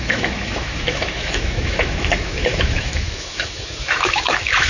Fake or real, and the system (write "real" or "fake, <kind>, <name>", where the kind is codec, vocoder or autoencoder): fake, autoencoder, DAC-VAE